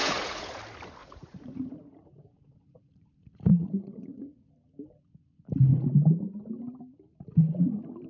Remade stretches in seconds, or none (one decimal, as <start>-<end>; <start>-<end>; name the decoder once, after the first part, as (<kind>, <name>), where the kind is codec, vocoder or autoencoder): 0.0-0.6 (vocoder, Vocos); 1.0-4.5